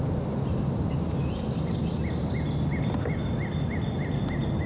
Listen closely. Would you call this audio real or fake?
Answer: real